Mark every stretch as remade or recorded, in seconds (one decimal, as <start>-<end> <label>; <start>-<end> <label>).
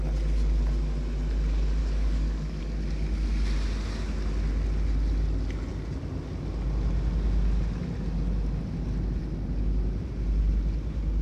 0.0-1.8 recorded; 1.8-2.6 remade; 2.6-11.2 recorded